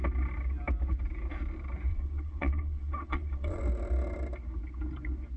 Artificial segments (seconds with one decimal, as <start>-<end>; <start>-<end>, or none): 1.9-3.6